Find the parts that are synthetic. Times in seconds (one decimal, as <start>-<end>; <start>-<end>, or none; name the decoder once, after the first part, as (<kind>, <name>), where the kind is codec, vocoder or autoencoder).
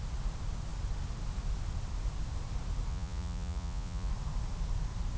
2.9-4.1 (vocoder, Vocos)